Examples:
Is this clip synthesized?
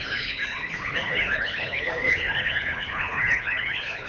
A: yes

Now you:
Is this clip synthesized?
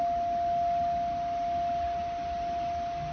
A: no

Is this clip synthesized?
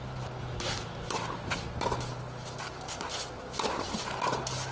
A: no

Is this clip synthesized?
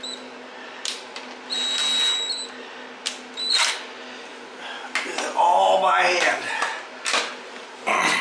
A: no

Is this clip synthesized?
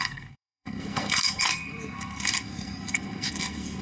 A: yes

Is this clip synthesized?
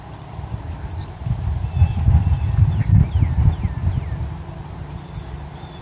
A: no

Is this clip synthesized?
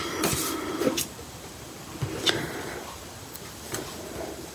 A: yes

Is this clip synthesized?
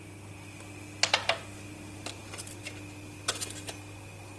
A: no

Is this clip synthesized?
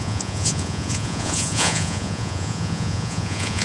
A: yes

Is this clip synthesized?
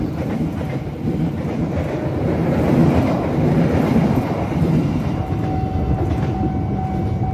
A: no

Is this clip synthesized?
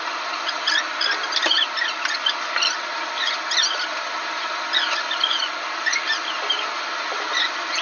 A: no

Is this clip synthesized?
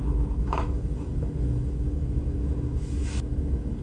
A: yes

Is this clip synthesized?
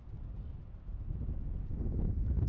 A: no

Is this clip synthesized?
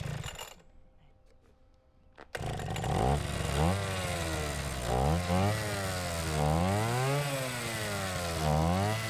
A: no